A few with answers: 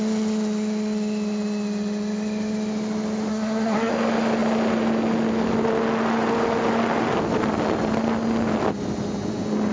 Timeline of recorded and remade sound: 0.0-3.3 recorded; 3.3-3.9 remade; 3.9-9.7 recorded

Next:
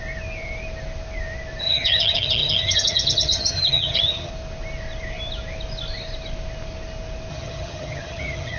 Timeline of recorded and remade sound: 0.0-1.6 recorded; 1.6-4.3 remade; 4.3-7.3 recorded; 7.3-8.6 remade

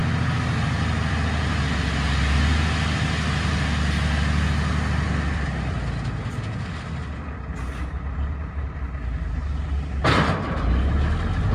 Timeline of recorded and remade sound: 0.0-11.5 recorded

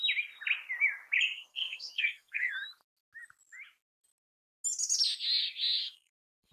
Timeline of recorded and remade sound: 0.0-1.5 recorded; 1.5-2.5 remade; 2.5-5.8 recorded; 5.8-6.5 remade

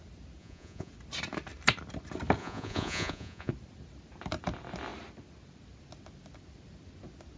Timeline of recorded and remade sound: 0.0-0.4 recorded; 0.4-0.9 remade; 0.9-2.4 recorded; 2.4-3.5 remade; 3.5-7.4 recorded

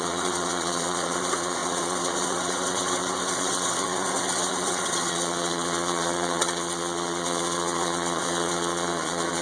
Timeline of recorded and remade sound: 0.0-9.4 remade

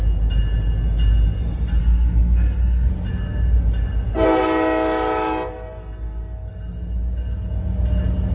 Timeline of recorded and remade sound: 0.0-1.8 recorded; 1.8-2.9 remade; 2.9-8.3 recorded

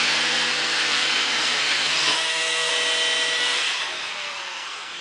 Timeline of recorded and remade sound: 0.0-2.7 remade; 2.7-3.4 recorded; 3.4-5.0 remade